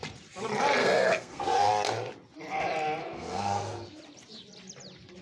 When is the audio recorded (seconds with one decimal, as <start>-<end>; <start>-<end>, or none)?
0.0-0.8; 1.7-3.1; 4.0-5.2